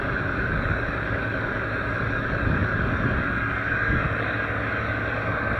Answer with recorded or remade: remade